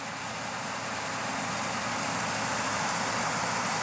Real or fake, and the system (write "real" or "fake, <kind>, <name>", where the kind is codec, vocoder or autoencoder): real